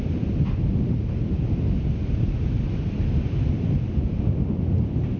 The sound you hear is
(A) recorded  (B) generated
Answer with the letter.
A